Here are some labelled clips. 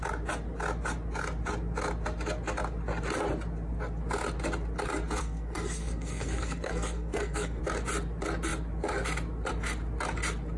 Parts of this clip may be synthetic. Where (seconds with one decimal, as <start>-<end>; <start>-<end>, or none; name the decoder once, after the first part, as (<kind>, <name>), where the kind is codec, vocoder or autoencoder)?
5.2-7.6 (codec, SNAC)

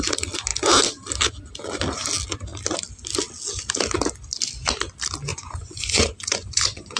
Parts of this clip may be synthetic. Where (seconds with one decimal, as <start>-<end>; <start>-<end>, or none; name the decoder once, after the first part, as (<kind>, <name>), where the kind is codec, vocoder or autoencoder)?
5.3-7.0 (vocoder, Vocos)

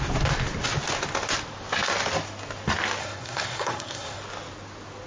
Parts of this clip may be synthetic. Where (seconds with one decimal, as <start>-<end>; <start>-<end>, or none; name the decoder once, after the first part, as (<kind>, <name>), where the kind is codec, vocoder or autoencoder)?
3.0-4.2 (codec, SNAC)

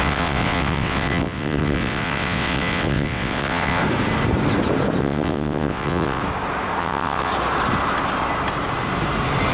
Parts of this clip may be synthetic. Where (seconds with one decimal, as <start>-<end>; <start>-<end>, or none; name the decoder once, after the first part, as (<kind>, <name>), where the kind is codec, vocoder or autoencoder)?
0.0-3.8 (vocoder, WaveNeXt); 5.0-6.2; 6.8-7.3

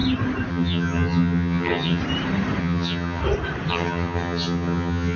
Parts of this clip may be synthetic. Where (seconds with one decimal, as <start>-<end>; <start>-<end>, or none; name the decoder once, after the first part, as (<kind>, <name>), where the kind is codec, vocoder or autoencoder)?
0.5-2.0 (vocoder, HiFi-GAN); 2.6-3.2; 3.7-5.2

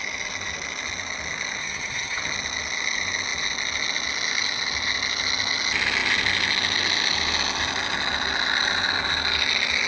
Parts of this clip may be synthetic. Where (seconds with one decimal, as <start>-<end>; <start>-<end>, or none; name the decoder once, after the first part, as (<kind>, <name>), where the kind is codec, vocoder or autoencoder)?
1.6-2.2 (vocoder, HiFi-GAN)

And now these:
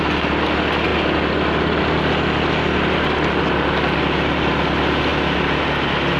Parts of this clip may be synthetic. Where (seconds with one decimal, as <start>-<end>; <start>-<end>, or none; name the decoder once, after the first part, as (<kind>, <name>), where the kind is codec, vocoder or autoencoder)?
none